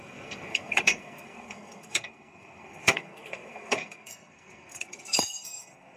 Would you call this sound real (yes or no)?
no